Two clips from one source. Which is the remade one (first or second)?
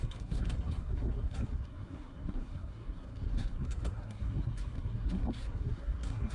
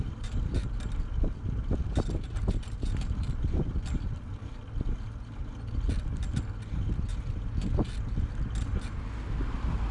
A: first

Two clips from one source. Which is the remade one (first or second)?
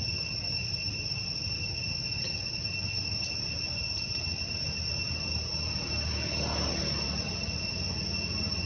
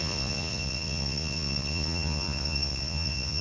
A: second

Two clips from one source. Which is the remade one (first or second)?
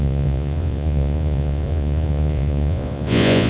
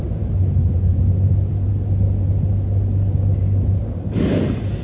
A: first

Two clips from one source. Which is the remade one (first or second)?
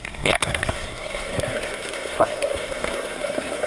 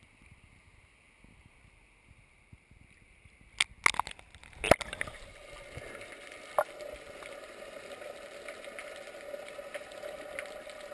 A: first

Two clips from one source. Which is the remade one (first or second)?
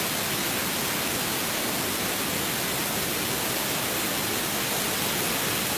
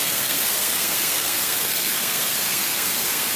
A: second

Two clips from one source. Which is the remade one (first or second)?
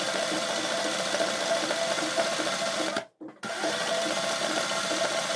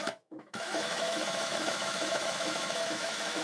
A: second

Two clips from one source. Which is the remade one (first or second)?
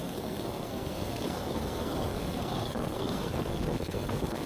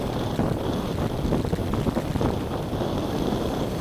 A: first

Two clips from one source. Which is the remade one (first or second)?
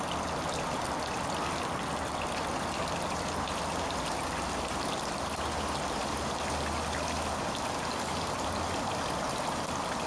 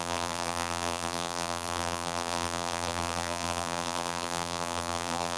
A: second